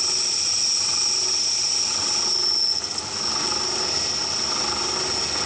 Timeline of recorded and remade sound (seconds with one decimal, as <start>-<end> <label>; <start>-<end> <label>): 0.0-5.5 recorded